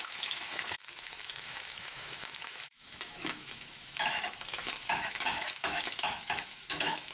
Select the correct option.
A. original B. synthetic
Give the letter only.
B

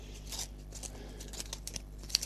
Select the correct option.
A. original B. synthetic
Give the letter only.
A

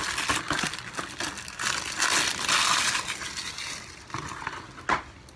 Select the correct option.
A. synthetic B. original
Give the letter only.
B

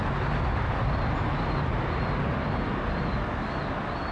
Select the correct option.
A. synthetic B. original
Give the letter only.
B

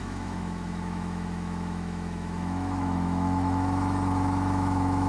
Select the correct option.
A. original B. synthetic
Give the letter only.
B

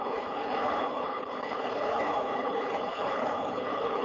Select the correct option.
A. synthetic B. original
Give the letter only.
A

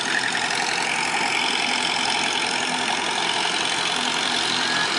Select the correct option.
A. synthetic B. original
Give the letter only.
B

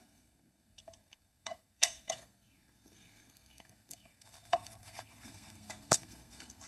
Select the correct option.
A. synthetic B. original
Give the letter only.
A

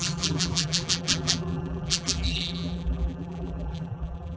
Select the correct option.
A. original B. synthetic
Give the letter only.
B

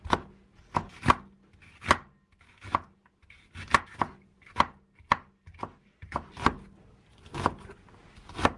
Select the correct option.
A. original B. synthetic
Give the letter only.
A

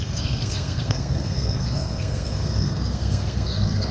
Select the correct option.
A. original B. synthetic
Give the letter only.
B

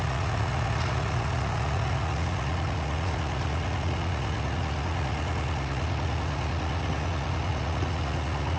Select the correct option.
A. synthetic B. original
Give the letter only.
A